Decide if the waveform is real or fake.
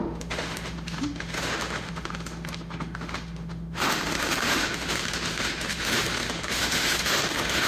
fake